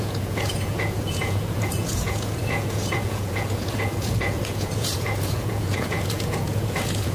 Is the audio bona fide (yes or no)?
no